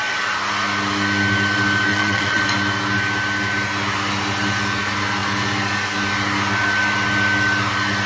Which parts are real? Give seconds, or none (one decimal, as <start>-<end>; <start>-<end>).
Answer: 0.0-1.9; 2.4-8.1